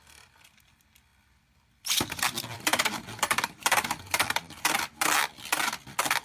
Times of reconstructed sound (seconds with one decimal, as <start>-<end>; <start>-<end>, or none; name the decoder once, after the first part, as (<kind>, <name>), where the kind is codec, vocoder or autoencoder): 1.1-4.8 (vocoder, BigVGAN v2)